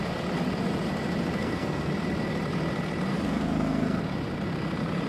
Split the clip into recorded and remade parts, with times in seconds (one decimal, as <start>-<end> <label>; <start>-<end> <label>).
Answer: 0.0-1.4 recorded; 1.4-1.9 remade; 1.9-3.1 recorded; 3.1-4.0 remade; 4.0-5.1 recorded